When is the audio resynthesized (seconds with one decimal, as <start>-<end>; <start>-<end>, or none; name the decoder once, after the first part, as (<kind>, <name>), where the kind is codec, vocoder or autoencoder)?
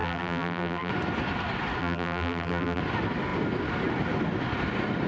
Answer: 0.0-0.9 (vocoder, BigVGAN v2); 1.8-2.8